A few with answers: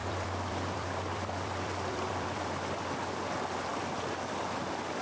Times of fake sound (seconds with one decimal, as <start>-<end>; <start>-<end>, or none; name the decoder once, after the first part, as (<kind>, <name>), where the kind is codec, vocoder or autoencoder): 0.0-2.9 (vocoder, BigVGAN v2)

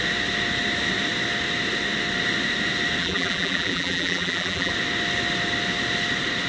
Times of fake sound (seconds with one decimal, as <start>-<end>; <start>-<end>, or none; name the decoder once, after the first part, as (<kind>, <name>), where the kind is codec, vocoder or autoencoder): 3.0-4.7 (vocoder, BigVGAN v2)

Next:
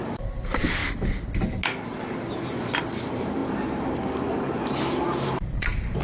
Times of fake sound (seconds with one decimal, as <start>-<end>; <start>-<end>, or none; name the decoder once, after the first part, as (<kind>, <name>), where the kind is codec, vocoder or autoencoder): 0.0-0.8 (vocoder, BigVGAN v2); 3.0-6.0